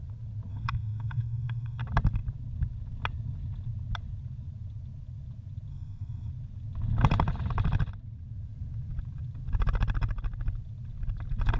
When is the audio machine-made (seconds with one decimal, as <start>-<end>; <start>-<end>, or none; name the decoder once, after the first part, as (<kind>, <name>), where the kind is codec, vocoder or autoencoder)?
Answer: 0.5-1.8 (codec, SNAC); 5.7-6.3